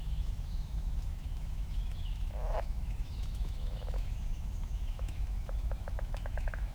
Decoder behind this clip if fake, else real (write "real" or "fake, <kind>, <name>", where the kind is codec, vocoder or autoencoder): fake, autoencoder, DAC-VAE